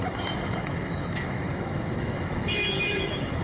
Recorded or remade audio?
remade